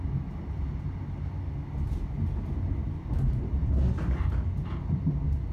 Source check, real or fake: real